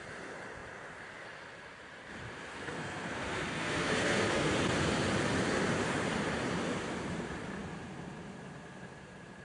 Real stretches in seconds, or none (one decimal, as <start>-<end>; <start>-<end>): 0.0-2.5; 4.5-9.4